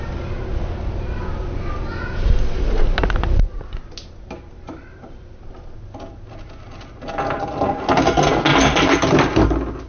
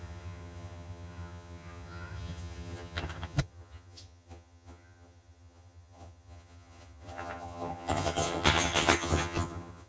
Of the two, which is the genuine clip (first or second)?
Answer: first